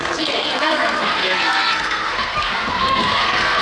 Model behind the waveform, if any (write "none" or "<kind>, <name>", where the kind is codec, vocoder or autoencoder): codec, SNAC